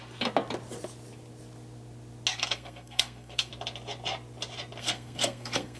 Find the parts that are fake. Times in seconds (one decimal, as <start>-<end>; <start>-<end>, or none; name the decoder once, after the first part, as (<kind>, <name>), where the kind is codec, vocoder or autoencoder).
2.3-3.5 (codec, SNAC); 4.8-5.8